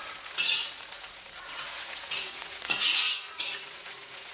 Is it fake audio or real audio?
fake